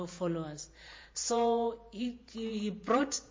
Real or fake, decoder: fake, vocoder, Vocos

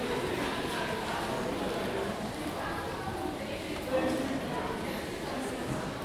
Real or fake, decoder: real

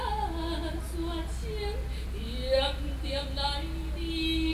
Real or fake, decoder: real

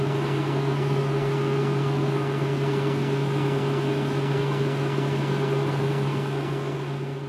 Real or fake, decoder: fake, codec, SNAC